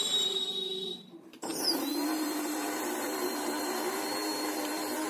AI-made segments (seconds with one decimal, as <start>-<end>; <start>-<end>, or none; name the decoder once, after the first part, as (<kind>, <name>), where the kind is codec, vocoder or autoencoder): 0.0-5.1 (vocoder, BigVGAN v2)